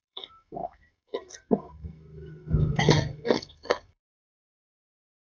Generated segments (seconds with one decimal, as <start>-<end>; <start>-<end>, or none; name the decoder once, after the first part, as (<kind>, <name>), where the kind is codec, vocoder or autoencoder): 0.0-5.3 (codec, SNAC)